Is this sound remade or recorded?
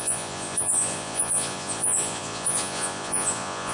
remade